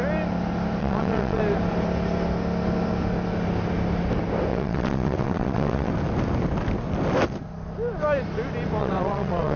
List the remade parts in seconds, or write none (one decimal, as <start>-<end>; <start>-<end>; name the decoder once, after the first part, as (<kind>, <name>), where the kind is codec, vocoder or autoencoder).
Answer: 0.8-1.4 (vocoder, WaveNeXt); 4.5-5.9; 8.8-9.6